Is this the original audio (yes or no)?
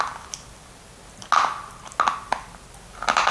yes